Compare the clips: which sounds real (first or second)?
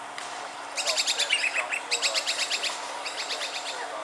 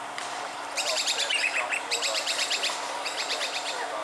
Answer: first